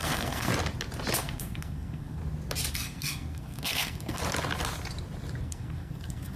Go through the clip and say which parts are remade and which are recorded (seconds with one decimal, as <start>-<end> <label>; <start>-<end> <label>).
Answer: 0.0-0.5 remade; 0.5-1.2 recorded; 1.2-2.2 remade; 2.2-2.7 recorded; 2.7-4.2 remade; 4.2-5.4 recorded; 5.4-6.4 remade